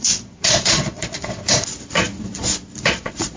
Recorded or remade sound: remade